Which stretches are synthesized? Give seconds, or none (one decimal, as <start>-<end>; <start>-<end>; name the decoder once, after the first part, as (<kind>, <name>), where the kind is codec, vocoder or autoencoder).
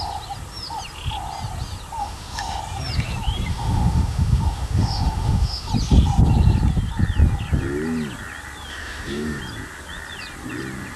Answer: 2.0-2.6 (autoencoder, DAC-VAE); 3.5-5.7; 8.7-9.4